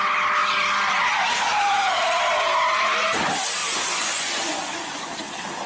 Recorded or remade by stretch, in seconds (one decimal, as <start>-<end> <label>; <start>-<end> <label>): 0.0-3.6 recorded; 3.6-5.1 remade; 5.1-5.7 recorded